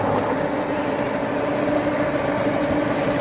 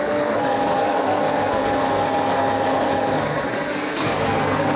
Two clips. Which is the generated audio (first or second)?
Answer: second